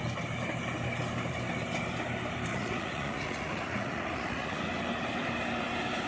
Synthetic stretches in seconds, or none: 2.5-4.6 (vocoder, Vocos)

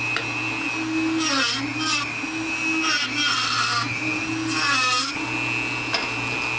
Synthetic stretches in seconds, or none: none